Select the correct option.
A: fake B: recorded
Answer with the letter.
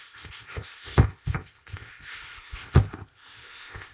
A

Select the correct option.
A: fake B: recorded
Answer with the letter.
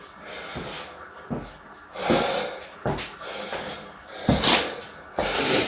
B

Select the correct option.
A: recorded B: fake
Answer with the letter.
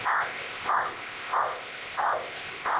B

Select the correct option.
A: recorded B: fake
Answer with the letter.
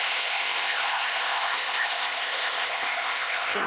B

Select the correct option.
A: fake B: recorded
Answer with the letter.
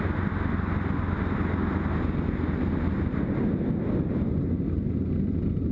B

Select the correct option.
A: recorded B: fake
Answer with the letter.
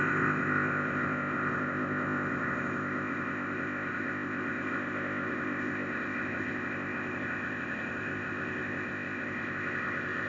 B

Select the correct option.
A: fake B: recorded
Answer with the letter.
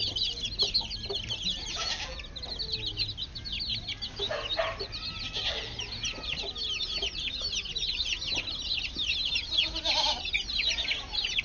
B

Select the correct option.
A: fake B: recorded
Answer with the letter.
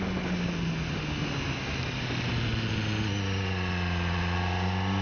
B